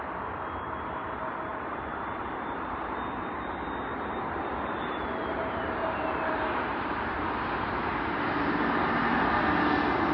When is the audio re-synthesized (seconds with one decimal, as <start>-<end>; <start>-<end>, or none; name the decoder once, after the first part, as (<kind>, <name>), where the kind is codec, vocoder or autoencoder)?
1.5-2.2 (vocoder, BigVGAN v2); 3.9-7.4